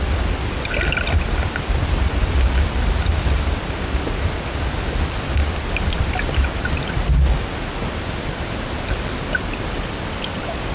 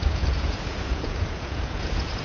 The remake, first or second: second